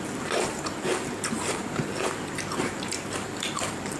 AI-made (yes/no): yes